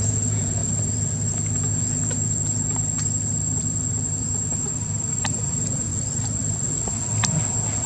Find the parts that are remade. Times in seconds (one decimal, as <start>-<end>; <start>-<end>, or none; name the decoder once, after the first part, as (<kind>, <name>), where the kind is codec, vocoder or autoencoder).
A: 0.0-0.6 (vocoder, Vocos); 5.3-5.9